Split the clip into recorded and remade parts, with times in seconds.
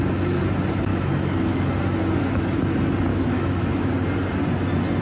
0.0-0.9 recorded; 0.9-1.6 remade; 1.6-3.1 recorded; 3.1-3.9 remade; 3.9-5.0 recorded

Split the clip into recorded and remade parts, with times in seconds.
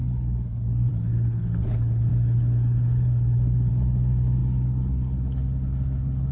0.0-6.3 remade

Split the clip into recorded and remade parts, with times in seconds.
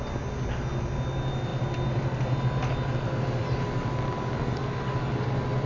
0.0-5.7 recorded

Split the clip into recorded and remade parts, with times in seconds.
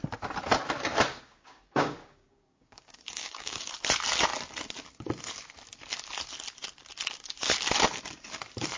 0.0-1.1 recorded; 1.1-3.7 remade; 3.7-8.8 recorded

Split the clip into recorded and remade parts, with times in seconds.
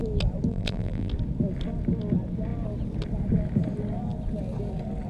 0.0-0.5 recorded; 0.5-1.1 remade; 1.1-5.1 recorded